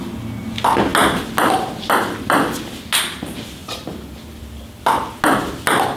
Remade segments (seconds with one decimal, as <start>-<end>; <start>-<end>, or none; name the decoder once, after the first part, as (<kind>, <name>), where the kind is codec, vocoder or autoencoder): 3.6-4.4 (vocoder, BigVGAN v2)